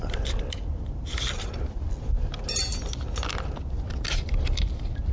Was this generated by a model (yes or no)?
no